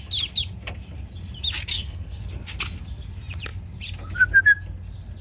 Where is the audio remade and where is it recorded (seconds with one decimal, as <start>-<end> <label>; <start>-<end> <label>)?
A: 0.0-1.7 recorded; 1.7-2.2 remade; 2.2-5.2 recorded